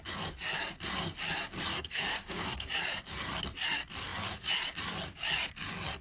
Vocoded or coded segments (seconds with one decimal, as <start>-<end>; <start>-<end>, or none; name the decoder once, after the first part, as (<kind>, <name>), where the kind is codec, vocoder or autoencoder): 1.7-2.7 (codec, DAC)